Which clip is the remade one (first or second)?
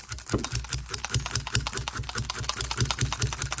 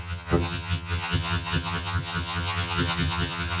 second